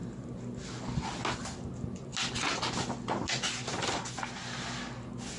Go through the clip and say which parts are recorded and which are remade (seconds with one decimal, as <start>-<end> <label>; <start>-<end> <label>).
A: 0.0-5.4 recorded